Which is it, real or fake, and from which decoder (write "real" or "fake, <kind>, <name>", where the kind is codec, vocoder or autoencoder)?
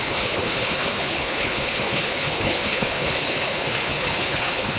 fake, codec, HILCodec